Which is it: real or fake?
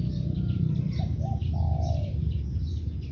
real